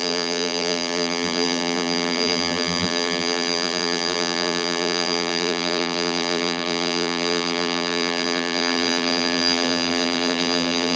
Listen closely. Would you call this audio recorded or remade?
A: remade